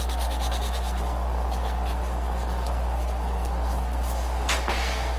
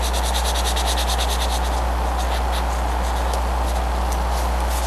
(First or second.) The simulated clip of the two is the first